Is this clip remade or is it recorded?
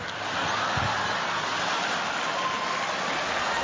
recorded